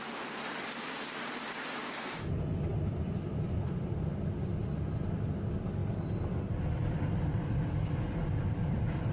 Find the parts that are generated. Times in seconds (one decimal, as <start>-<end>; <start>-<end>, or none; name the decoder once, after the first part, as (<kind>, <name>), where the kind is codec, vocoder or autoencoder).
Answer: 0.0-5.8 (vocoder, BigVGAN v2); 6.7-9.1